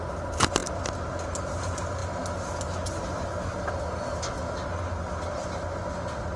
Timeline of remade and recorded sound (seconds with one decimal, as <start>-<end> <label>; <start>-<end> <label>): 0.0-6.4 recorded